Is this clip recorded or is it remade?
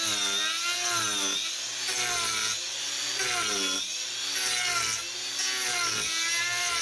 recorded